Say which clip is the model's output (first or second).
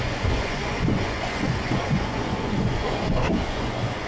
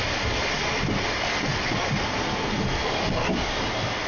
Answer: first